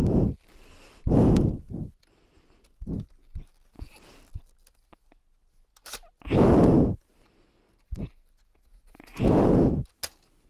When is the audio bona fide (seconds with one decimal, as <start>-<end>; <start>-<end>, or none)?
0.0-8.5; 9.7-10.5